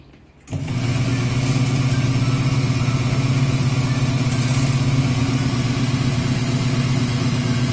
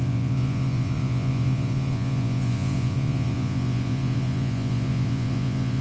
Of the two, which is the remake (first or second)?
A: second